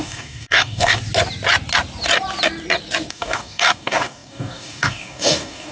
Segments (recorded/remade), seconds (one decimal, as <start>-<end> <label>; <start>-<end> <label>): 0.0-1.0 remade; 1.0-3.1 recorded; 3.1-5.7 remade